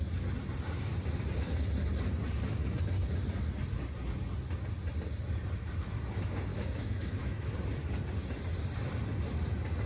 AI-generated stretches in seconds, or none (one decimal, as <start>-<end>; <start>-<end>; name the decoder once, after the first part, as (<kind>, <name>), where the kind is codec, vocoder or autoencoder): 6.5-7.5 (autoencoder, DAC-VAE)